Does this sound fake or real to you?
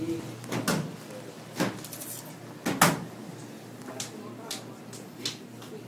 real